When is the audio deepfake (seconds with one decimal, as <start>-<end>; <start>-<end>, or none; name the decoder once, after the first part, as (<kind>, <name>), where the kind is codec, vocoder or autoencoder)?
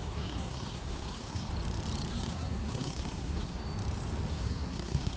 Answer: 0.0-1.5 (codec, SNAC); 2.1-3.6; 4.3-5.2